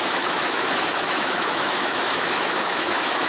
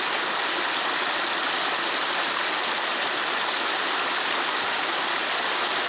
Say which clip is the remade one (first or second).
first